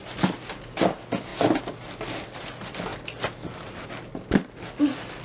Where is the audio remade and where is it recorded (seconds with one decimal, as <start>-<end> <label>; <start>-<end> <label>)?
0.0-5.2 recorded